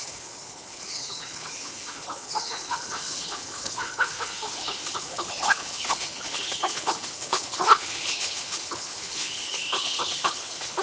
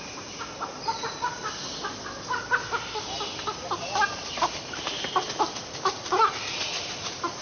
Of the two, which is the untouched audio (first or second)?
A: second